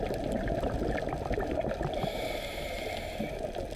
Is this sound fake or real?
real